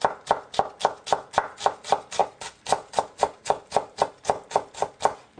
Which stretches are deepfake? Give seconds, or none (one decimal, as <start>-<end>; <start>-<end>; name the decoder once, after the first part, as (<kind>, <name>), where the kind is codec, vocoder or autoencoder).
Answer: none